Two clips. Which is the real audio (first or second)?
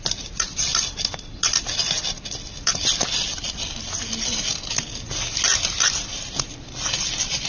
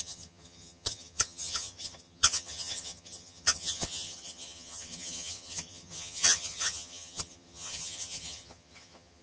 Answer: first